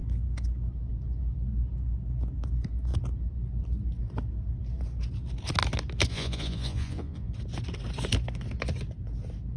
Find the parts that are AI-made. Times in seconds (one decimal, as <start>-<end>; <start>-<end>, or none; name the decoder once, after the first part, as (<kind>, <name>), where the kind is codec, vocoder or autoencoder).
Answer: 6.1-7.3 (vocoder, Vocos)